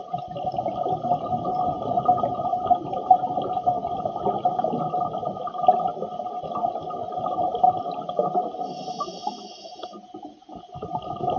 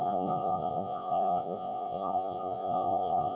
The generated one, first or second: second